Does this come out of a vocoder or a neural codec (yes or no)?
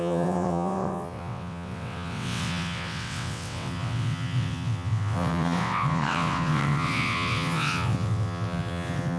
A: yes